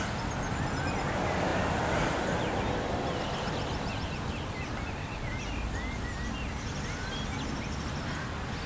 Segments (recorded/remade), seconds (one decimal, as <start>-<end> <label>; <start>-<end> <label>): 0.0-8.7 recorded